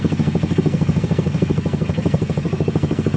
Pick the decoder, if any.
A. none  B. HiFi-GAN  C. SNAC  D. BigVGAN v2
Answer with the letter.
C